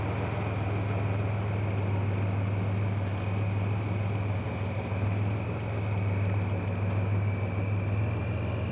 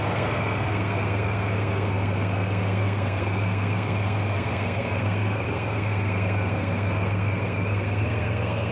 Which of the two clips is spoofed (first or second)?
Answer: second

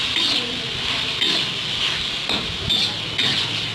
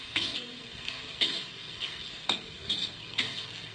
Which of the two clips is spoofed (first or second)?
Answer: second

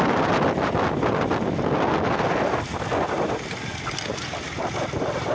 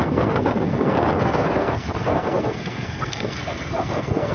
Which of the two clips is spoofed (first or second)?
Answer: second